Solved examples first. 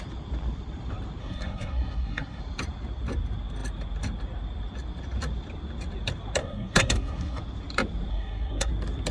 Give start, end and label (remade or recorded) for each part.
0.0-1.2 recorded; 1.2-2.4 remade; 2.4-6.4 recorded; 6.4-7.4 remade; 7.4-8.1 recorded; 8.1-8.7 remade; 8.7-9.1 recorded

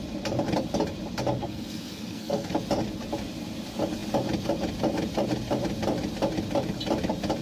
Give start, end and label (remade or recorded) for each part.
0.0-1.4 recorded; 1.4-2.5 remade; 2.5-7.4 recorded